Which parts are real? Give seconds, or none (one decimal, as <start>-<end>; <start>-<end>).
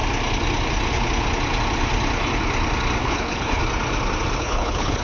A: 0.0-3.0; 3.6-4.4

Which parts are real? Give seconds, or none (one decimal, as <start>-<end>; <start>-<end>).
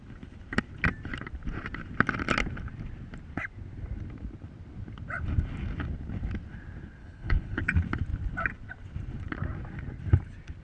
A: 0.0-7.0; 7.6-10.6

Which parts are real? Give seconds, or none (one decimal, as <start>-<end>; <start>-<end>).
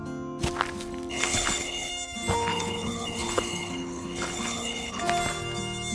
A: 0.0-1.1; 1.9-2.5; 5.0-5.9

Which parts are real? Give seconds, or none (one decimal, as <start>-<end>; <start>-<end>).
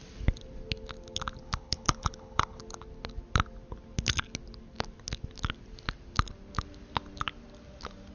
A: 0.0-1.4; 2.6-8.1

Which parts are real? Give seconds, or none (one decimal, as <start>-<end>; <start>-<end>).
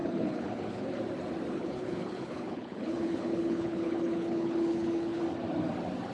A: 1.0-1.5; 5.2-6.1